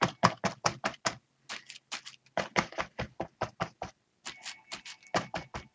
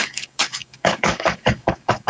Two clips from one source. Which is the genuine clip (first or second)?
first